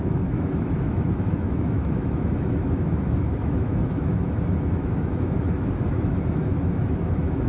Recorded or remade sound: remade